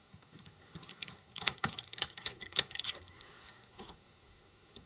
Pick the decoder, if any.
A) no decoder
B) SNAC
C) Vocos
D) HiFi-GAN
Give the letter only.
B